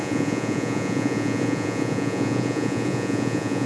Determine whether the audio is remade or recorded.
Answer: remade